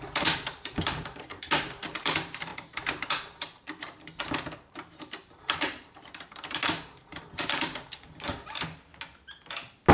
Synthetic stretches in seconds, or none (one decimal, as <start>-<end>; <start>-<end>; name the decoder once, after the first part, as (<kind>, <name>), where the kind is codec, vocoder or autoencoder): 0.0-8.9 (vocoder, BigVGAN v2)